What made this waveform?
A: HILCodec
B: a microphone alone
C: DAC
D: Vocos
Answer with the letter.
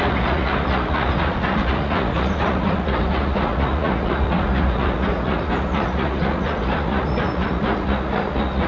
D